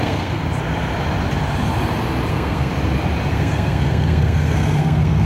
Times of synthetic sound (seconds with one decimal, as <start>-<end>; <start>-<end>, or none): 0.0-0.4; 2.3-2.7; 3.3-5.3